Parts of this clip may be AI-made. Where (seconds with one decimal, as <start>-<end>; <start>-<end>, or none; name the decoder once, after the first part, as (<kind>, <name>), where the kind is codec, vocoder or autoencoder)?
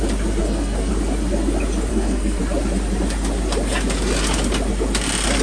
0.4-0.9 (codec, SNAC); 1.9-2.4